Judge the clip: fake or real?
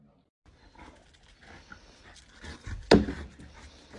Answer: real